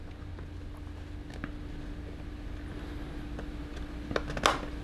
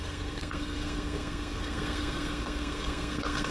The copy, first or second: second